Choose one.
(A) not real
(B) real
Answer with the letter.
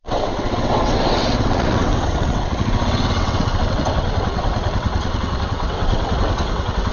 A